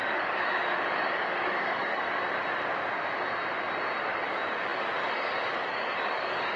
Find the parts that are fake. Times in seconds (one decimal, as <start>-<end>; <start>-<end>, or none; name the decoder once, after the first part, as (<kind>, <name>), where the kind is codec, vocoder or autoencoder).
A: 0.0-2.2 (codec, DAC); 4.0-6.6